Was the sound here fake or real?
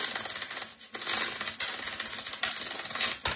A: real